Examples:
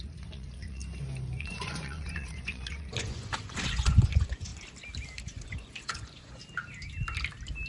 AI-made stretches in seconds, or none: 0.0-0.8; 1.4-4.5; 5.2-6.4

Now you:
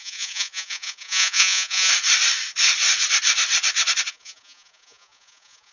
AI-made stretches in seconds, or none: 0.0-1.9; 4.1-5.7

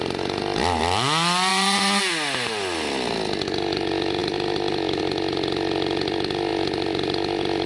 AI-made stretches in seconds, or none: 1.5-2.1

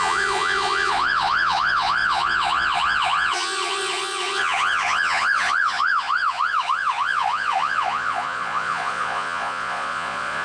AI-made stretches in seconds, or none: 0.0-10.4

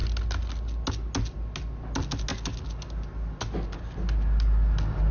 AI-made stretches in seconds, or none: none

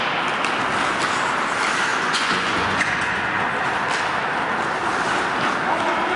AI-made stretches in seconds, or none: 1.9-3.5